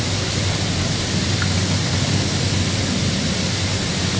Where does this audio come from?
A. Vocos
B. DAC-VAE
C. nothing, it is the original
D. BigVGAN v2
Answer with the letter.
C